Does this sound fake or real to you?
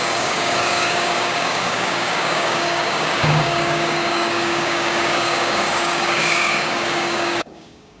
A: fake